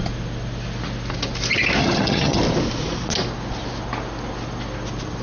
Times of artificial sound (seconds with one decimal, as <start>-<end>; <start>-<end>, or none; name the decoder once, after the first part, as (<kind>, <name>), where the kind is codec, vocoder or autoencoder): 1.8-2.4 (vocoder, HiFi-GAN)